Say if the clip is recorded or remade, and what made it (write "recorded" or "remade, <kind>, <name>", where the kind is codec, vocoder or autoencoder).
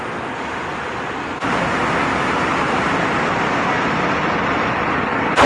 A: recorded